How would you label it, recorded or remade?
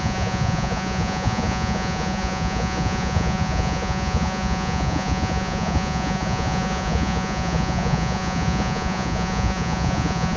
remade